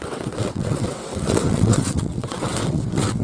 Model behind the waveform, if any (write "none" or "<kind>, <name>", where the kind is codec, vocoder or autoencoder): vocoder, WaveNeXt